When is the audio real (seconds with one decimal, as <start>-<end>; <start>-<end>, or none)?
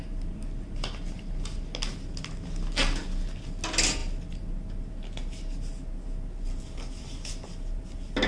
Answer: 0.0-8.3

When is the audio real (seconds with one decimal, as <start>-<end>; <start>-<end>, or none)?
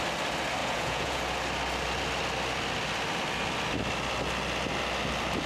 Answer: 0.0-0.6; 1.2-5.5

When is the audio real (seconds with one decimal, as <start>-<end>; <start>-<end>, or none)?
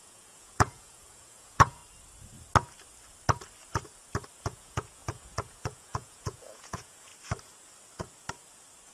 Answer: 1.8-4.4; 7.1-8.9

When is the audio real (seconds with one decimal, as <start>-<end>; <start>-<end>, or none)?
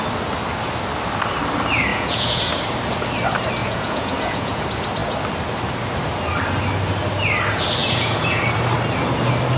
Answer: 0.0-1.9; 2.5-3.6; 4.6-7.8; 8.4-9.6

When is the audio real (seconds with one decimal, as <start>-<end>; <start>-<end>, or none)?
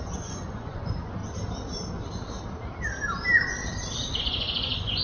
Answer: 1.2-4.2